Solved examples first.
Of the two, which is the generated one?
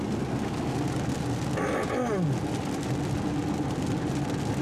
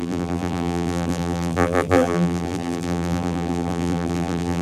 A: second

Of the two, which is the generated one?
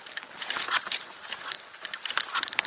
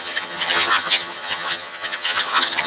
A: second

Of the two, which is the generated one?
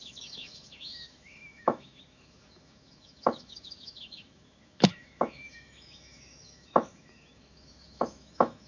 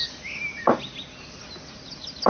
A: first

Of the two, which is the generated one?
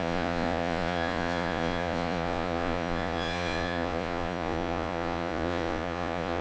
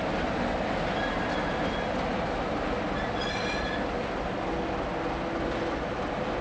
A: first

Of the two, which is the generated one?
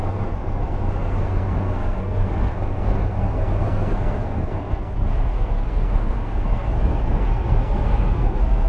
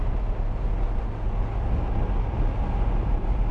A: first